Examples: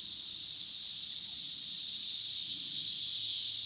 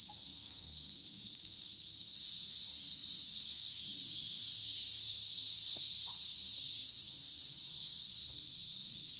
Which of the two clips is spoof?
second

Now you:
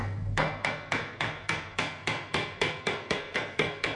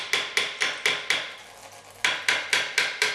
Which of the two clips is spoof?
first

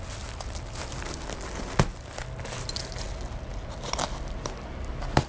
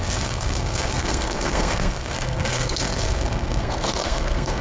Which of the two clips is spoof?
second